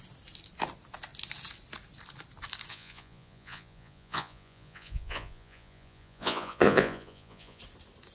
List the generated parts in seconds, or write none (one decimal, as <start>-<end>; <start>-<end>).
2.7-7.6